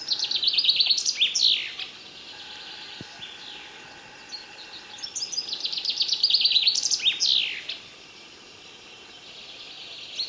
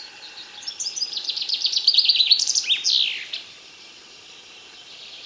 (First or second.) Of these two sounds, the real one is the first